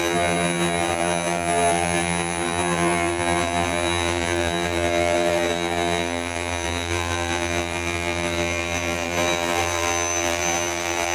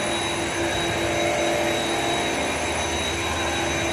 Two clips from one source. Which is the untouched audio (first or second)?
second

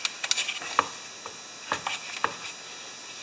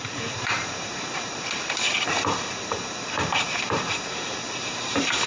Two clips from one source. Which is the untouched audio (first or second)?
first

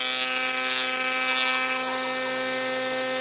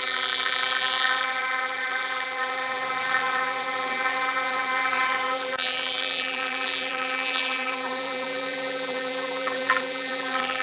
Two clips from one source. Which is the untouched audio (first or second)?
first